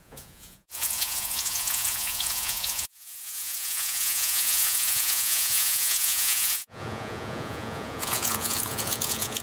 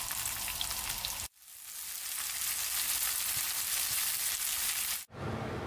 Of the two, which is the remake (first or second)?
first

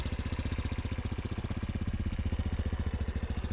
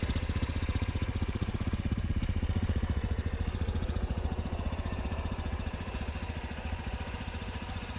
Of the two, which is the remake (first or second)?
second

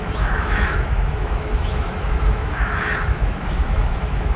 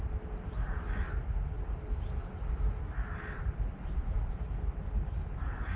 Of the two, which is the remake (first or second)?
first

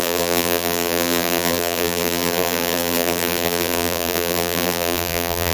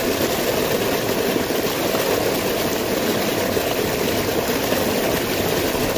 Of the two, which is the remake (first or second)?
first